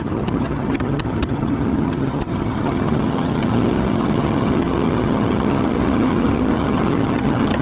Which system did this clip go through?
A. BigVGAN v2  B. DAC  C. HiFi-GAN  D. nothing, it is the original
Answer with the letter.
C